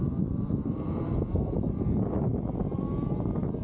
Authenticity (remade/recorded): recorded